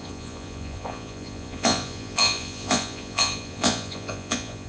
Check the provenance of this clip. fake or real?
fake